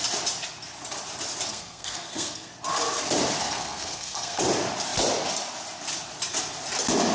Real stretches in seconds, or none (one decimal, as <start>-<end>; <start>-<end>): 0.0-1.5; 2.5-3.4; 4.4-7.1